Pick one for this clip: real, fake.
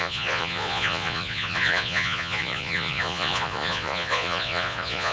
fake